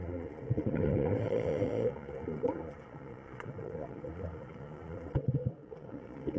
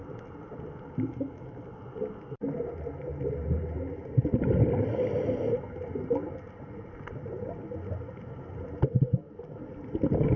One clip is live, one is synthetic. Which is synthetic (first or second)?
first